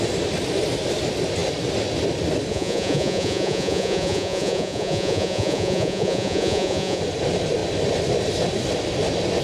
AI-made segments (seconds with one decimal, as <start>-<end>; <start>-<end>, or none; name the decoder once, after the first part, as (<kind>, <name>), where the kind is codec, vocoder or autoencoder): 2.5-7.0 (vocoder, Vocos)